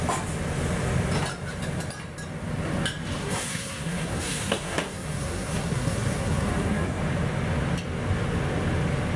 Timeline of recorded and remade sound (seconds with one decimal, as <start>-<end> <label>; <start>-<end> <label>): 0.0-3.2 recorded; 3.2-7.0 remade; 7.0-9.2 recorded